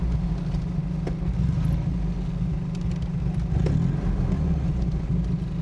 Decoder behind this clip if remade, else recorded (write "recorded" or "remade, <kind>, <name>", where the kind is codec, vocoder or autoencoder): recorded